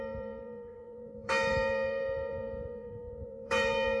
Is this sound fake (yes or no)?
yes